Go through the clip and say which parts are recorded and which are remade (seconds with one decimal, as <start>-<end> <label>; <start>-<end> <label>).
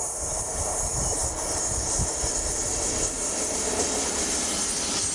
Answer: 0.0-5.1 recorded